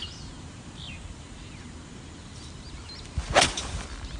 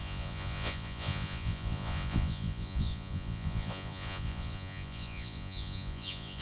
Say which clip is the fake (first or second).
second